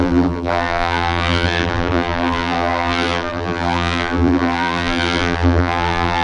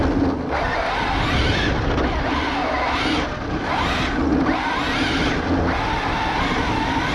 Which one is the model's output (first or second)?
first